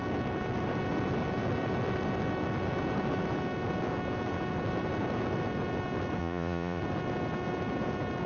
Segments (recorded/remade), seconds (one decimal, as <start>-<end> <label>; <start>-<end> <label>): 0.0-6.2 recorded; 6.2-6.8 remade; 6.8-8.3 recorded